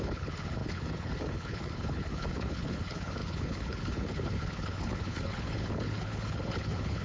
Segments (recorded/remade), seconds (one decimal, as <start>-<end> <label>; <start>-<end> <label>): 0.0-7.0 remade